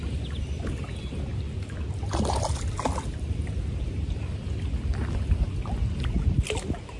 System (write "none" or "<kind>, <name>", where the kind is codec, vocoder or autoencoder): none